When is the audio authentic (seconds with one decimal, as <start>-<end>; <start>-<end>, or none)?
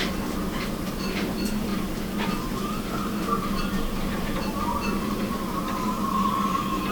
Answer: 0.0-6.9